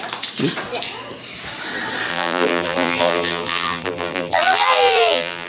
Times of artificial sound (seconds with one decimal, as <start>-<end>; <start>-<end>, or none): 2.1-5.5